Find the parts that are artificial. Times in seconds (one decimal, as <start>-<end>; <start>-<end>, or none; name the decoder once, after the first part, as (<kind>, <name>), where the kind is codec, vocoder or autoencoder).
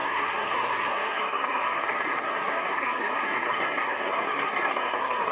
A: 0.0-5.3 (codec, SNAC)